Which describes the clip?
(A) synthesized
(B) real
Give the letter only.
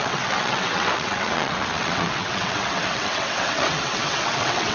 A